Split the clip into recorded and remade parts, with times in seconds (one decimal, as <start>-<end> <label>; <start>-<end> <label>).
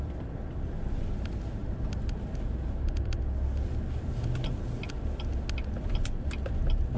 0.0-7.0 recorded